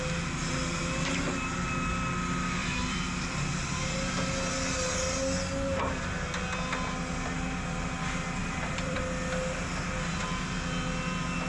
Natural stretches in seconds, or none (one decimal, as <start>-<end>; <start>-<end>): 0.0-2.6; 4.2-8.4; 9.0-11.5